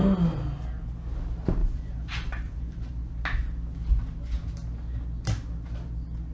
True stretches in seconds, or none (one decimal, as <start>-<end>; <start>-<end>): 0.0-1.6; 2.9-6.3